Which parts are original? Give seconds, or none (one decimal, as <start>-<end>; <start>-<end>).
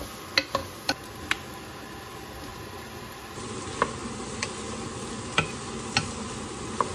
0.0-0.6; 1.2-2.5; 3.2-6.9